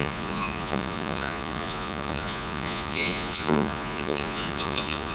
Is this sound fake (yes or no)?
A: yes